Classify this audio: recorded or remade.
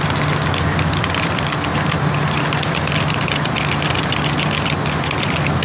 recorded